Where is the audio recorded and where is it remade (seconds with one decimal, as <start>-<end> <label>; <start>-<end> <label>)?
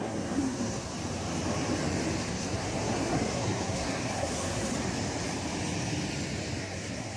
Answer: 0.0-0.9 remade; 0.9-2.2 recorded; 2.2-4.7 remade; 4.7-6.6 recorded; 6.6-7.2 remade